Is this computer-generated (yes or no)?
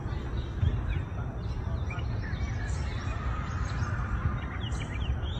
yes